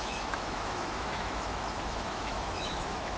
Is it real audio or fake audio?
fake